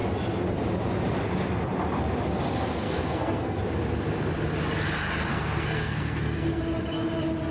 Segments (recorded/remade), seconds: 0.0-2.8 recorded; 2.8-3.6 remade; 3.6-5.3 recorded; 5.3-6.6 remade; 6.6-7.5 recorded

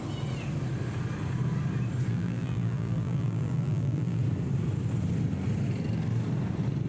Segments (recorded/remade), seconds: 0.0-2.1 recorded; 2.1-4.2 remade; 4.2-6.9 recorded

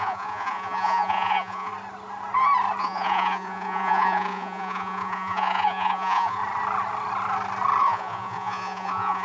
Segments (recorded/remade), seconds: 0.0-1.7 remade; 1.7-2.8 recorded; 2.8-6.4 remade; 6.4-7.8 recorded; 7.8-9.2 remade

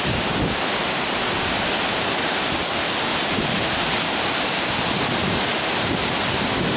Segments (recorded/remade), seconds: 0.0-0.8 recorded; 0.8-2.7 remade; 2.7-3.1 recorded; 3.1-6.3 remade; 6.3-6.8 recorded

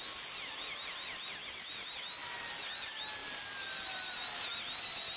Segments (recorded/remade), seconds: 0.0-2.2 recorded; 2.2-2.8 remade; 2.8-3.2 recorded; 3.2-4.5 remade; 4.5-5.2 recorded